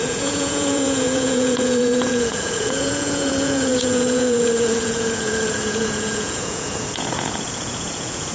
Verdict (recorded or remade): remade